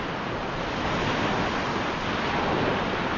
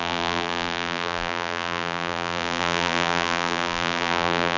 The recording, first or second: first